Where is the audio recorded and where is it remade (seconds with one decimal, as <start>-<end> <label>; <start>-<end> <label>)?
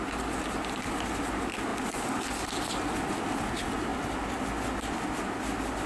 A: 0.0-5.9 recorded